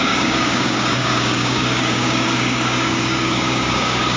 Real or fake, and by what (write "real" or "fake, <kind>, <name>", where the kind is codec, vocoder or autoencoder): fake, codec, DAC